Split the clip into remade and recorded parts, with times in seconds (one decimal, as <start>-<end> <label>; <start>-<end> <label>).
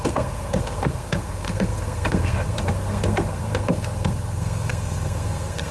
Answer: 0.0-5.7 remade